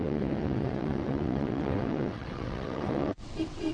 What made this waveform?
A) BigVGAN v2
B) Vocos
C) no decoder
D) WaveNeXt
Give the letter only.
D